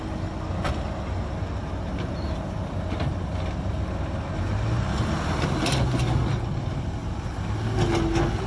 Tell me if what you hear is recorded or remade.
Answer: recorded